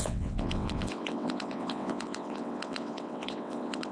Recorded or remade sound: remade